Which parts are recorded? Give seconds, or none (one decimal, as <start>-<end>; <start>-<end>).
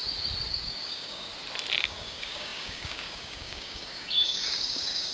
0.0-0.5; 1.3-1.8